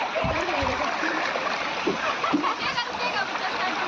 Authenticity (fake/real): fake